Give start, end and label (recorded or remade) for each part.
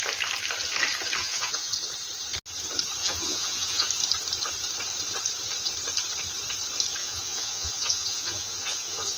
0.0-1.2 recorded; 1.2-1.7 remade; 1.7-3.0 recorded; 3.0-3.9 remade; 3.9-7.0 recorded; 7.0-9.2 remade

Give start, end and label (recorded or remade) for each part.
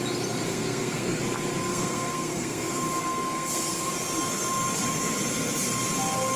0.0-0.5 recorded; 0.5-1.2 remade; 1.2-1.7 recorded; 1.7-3.8 remade; 3.8-6.4 recorded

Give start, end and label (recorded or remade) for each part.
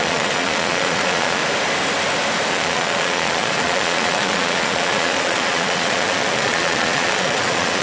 0.0-1.4 remade; 1.4-2.5 recorded; 2.5-7.8 remade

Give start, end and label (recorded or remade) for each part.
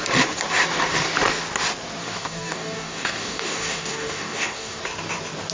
0.0-2.0 recorded; 2.0-4.8 remade; 4.8-5.5 recorded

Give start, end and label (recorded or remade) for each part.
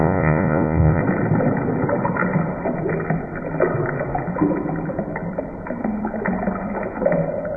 0.0-1.0 remade; 1.0-7.6 recorded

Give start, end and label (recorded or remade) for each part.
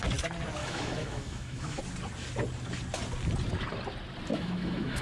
0.0-0.6 recorded; 0.6-1.8 remade; 1.8-4.3 recorded; 4.3-5.0 remade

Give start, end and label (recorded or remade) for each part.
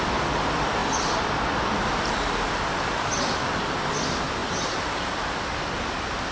0.0-6.3 recorded